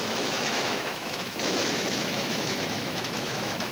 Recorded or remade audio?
remade